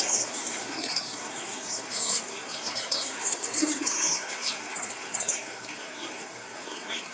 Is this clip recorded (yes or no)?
no